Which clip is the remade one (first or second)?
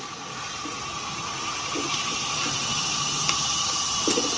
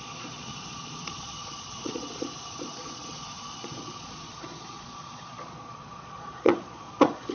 second